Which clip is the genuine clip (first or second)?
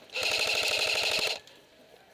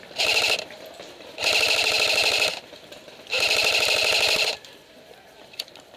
first